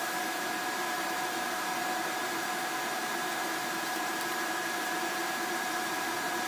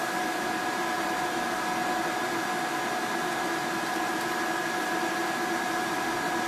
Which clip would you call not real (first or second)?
first